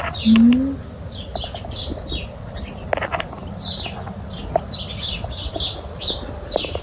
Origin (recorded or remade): recorded